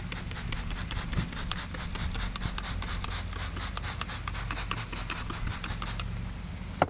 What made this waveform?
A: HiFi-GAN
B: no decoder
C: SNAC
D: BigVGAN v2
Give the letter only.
B